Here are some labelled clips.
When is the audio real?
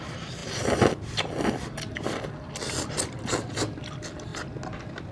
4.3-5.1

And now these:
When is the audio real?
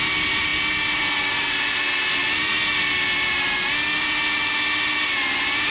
0.0-5.7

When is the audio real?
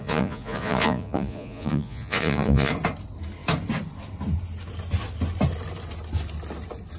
2.7-7.0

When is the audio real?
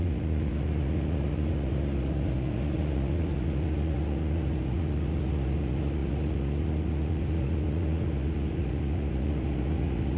none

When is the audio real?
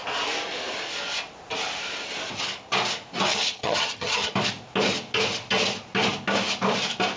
0.0-3.3; 4.3-7.2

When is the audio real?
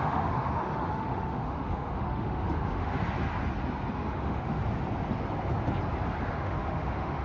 2.9-3.9; 4.6-6.3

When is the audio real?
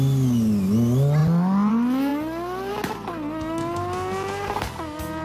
0.0-5.2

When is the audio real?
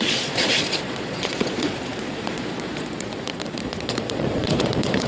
none